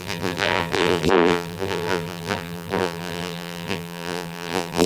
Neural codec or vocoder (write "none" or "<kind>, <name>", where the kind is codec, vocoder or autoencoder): vocoder, BigVGAN v2